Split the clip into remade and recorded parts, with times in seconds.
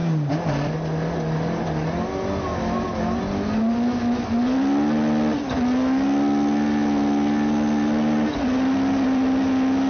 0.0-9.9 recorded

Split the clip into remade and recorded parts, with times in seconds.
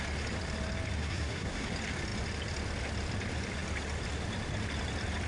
0.0-1.0 recorded; 1.0-1.7 remade; 1.7-5.3 recorded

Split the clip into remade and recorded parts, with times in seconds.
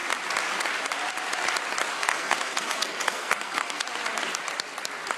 0.0-1.9 recorded; 1.9-3.8 remade; 3.8-5.2 recorded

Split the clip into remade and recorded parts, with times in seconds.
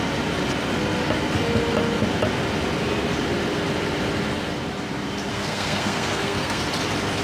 0.0-5.3 recorded; 5.3-6.6 remade; 6.6-7.2 recorded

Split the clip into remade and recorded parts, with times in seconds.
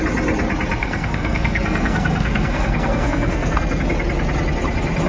0.0-0.8 recorded; 0.8-3.8 remade; 3.8-5.1 recorded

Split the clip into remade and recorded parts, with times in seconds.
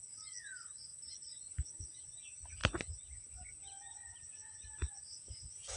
0.0-5.8 recorded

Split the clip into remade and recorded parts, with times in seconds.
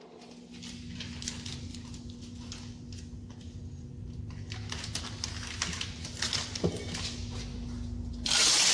0.0-8.7 recorded